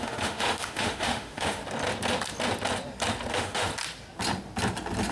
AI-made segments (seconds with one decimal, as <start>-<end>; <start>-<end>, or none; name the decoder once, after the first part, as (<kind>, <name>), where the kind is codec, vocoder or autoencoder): 0.0-1.6 (autoencoder, DAC-VAE); 3.3-3.7